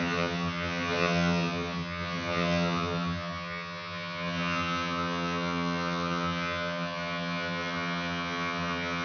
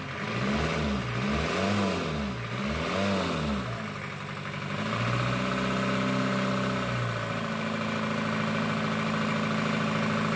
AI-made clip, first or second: first